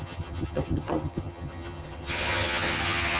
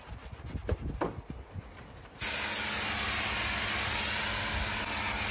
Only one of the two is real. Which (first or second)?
second